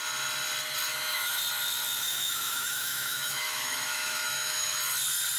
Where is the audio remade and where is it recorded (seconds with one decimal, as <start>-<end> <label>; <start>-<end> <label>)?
0.0-0.9 recorded; 0.9-1.4 remade; 1.4-2.0 recorded; 2.0-4.8 remade; 4.8-5.4 recorded